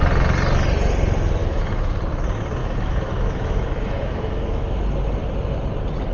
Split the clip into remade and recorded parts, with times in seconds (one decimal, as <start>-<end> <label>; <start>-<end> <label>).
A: 0.0-1.4 recorded; 1.4-2.0 remade; 2.0-2.6 recorded; 2.6-4.8 remade; 4.8-6.1 recorded